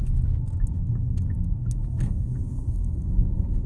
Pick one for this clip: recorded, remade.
remade